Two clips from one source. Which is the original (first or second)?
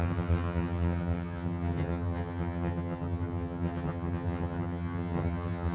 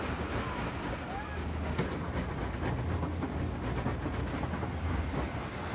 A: second